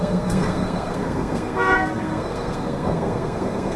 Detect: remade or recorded remade